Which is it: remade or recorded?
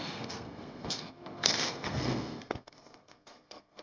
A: remade